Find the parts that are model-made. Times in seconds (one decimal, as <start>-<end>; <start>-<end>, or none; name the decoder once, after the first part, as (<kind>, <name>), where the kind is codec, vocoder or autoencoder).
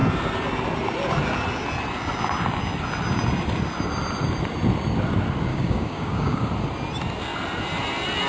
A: 5.5-6.5 (codec, DAC)